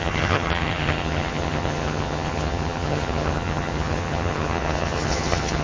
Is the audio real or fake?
fake